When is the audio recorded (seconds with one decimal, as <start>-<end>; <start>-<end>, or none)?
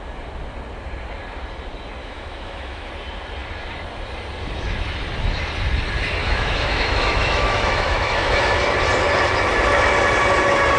0.0-2.0; 2.9-6.2; 8.6-10.8